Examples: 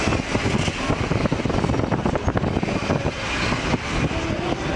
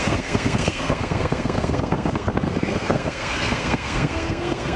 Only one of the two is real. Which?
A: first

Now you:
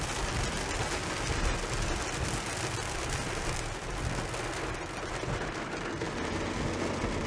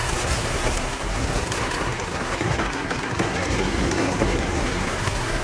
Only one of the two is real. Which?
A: first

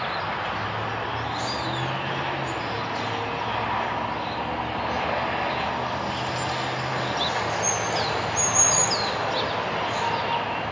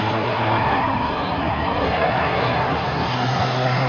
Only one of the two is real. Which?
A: first